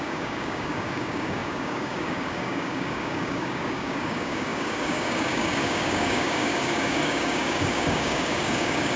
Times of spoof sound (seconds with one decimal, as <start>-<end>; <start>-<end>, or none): 0.0-9.0